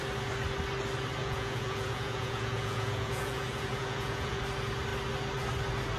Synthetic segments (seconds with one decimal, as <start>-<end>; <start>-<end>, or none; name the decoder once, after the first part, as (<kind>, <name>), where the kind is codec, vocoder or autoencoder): 1.2-4.4 (vocoder, Vocos)